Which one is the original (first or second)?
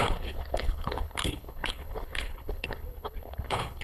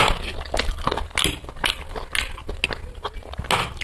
second